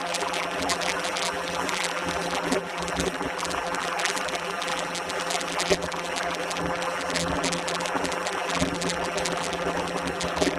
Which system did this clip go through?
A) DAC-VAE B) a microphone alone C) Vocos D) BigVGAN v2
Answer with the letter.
D